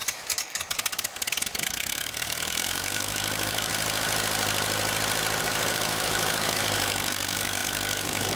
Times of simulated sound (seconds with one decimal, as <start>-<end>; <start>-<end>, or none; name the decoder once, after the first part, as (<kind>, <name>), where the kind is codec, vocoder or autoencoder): 0.0-3.7 (codec, DAC); 5.4-8.4